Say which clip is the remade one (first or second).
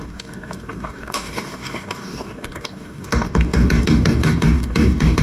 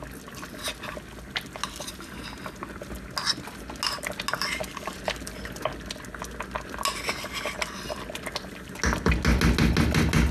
first